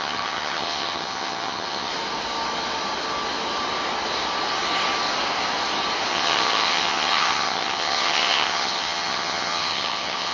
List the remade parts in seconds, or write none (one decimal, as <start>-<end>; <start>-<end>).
0.0-1.9; 6.1-10.3